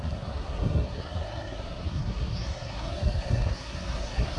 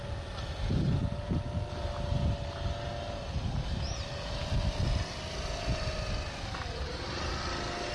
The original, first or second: second